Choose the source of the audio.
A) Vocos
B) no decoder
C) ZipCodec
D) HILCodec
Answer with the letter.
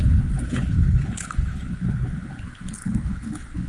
D